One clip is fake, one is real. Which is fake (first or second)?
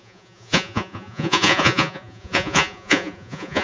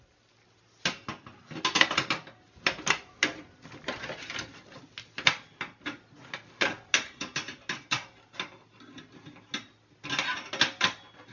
first